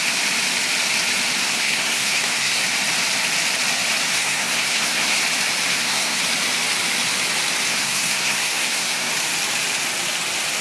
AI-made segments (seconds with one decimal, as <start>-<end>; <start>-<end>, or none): 1.4-2.6; 4.1-5.2; 5.7-6.2; 7.7-9.1